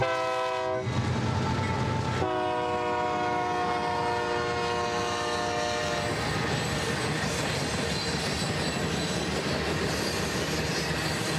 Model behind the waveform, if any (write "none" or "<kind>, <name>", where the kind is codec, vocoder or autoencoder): none